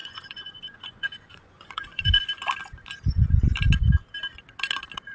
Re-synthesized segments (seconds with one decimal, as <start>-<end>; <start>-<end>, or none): 0.0-2.2